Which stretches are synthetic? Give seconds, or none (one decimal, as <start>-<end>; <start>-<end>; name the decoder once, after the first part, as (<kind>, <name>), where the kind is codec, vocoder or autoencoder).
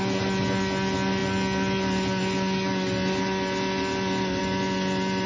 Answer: none